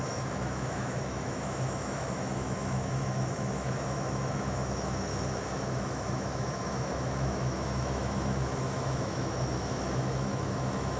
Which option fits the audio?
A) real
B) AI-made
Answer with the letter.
B